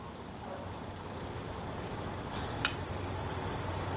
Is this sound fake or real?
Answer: real